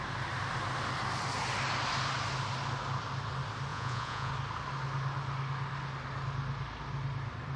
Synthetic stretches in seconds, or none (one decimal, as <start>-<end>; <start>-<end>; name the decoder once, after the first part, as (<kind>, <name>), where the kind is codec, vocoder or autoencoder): 3.7-4.3 (vocoder, Vocos)